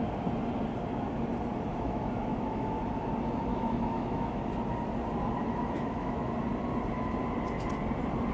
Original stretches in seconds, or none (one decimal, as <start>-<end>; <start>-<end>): 0.0-1.7; 2.8-3.5; 4.4-5.4; 6.3-8.3